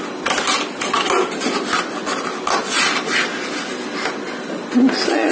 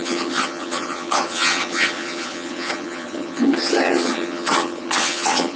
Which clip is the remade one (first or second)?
second